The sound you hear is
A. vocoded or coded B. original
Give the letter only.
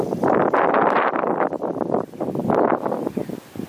B